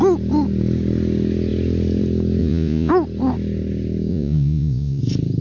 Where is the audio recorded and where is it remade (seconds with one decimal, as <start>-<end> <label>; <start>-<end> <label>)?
0.0-2.4 recorded; 2.4-2.9 remade; 2.9-4.1 recorded; 4.1-5.0 remade; 5.0-5.4 recorded